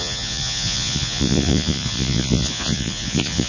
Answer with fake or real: fake